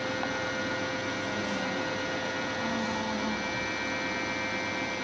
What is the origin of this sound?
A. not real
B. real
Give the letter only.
B